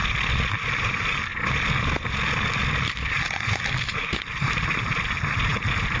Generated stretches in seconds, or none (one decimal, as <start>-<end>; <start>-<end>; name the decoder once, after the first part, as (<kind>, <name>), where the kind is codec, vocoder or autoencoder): 0.5-1.3 (vocoder, BigVGAN v2); 4.3-6.0